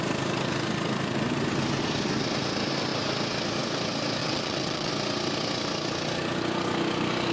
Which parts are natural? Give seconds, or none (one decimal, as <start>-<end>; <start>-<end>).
0.0-4.2; 4.9-7.3